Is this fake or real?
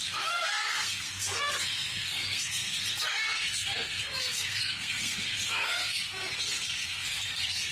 fake